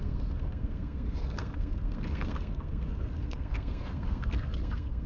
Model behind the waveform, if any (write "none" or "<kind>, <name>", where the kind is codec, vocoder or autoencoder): codec, SNAC